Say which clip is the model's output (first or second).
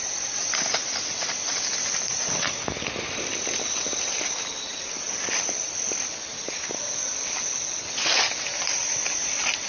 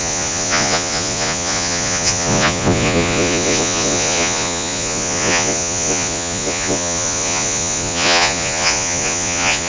second